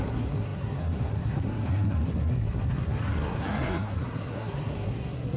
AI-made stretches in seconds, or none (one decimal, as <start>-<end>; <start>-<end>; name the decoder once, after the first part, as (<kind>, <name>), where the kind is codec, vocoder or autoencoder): 0.0-5.4 (codec, SNAC)